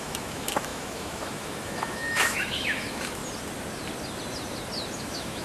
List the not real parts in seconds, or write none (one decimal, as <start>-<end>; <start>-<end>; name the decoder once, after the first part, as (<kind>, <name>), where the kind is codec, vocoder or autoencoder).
0.0-3.2 (autoencoder, DAC-VAE); 5.0-5.4